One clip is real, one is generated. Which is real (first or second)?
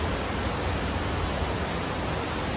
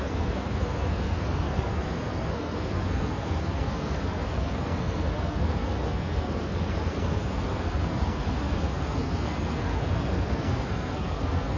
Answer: first